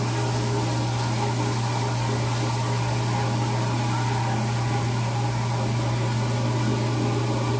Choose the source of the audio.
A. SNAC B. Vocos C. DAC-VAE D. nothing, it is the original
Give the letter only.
D